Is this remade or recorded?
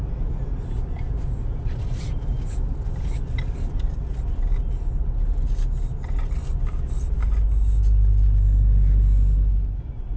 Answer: recorded